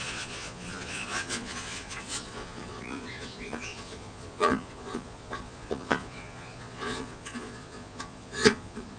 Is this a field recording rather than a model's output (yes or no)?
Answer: no